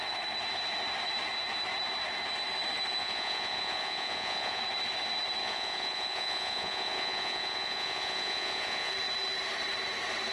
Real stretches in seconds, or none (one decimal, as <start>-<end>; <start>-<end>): 0.0-3.0; 4.6-5.4; 8.9-10.3